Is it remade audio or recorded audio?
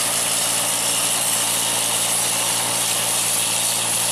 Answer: recorded